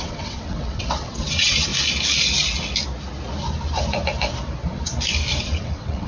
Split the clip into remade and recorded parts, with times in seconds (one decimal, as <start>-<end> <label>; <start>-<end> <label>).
0.0-1.7 remade; 1.7-5.4 recorded; 5.4-6.1 remade